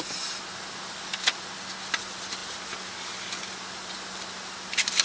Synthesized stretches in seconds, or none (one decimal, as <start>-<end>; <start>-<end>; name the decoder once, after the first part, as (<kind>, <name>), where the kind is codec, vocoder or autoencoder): none